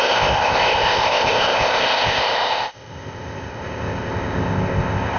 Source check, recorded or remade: remade